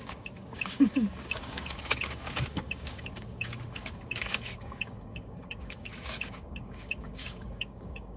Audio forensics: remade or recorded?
remade